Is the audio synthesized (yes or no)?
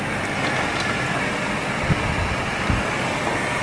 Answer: no